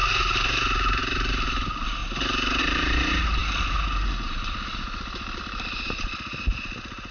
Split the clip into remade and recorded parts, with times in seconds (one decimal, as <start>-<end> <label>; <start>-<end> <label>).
0.0-1.0 recorded; 1.0-2.0 remade; 2.0-2.6 recorded; 2.6-7.1 remade